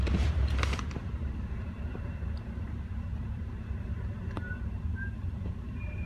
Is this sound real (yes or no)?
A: no